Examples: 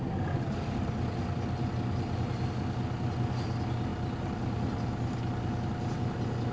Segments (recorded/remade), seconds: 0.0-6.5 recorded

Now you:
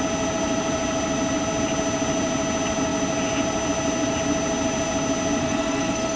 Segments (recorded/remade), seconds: 0.0-5.4 recorded; 5.4-6.2 remade

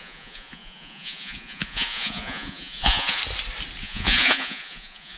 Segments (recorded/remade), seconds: 0.0-3.2 remade; 3.2-3.8 recorded; 3.8-5.2 remade

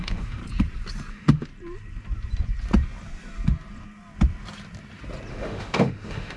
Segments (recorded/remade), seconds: 0.0-0.4 remade; 0.4-1.1 recorded; 1.1-1.5 remade; 1.5-5.3 recorded; 5.3-6.4 remade

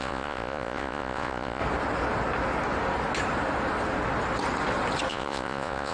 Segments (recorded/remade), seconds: 0.0-1.6 remade; 1.6-5.1 recorded; 5.1-5.9 remade